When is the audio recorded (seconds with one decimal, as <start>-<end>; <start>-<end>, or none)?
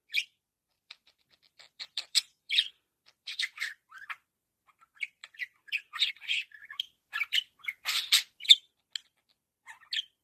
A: 0.0-0.7; 4.1-5.2; 6.1-10.2